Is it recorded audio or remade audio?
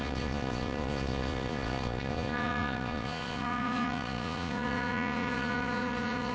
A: remade